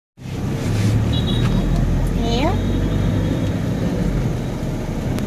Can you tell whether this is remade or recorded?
recorded